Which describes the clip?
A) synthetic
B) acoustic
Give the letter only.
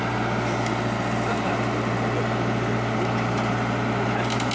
B